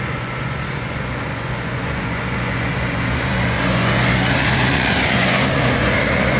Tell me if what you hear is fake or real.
fake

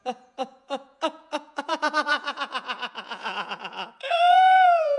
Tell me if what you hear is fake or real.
fake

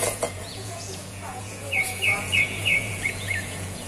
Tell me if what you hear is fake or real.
fake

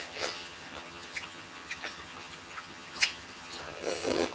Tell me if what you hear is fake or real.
fake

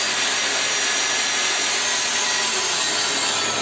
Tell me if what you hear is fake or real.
real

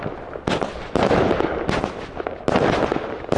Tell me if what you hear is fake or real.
real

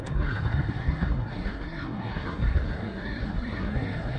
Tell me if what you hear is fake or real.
fake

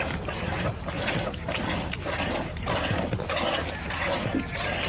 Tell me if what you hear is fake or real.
real